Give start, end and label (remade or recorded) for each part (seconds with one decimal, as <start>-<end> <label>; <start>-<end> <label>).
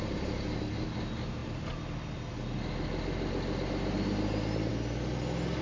0.0-5.6 recorded